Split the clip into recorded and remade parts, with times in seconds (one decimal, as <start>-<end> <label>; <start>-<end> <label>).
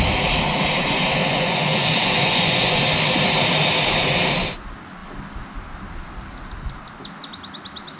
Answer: 0.0-1.2 recorded; 1.2-2.8 remade; 2.8-8.0 recorded